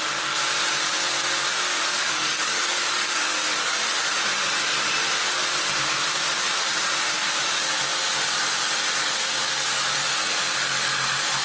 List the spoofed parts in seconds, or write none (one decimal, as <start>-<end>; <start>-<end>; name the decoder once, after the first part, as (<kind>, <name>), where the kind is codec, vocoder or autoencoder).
1.7-3.8 (codec, DAC); 9.0-10.1